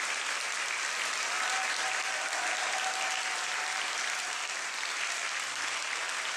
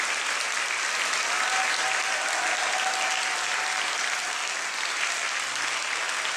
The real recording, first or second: second